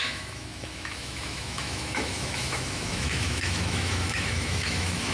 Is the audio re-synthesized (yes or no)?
yes